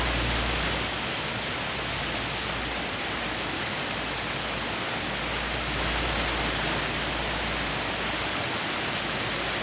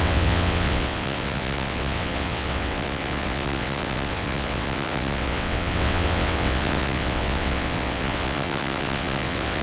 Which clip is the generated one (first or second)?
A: second